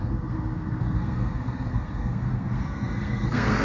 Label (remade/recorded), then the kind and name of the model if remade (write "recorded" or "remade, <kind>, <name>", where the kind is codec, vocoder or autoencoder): remade, codec, SNAC